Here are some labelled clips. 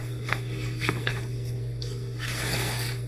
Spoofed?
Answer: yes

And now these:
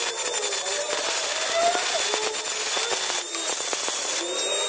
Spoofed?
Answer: no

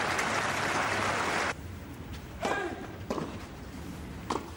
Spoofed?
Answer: no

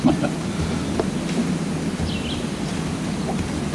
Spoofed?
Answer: no